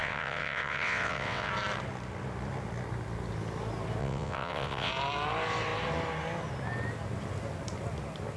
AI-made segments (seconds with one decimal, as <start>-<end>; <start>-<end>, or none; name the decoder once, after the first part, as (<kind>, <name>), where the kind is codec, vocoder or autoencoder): 0.0-1.5 (vocoder, WaveNeXt); 4.0-4.9